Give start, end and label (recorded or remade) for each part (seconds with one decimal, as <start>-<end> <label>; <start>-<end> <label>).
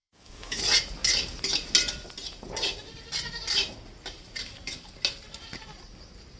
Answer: 0.0-0.6 remade; 0.6-6.4 recorded